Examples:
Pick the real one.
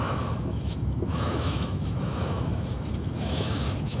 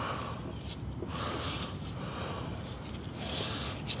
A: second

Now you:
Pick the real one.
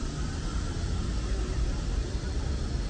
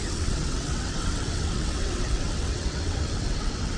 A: first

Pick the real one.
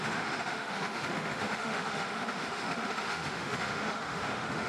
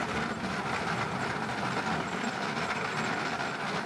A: second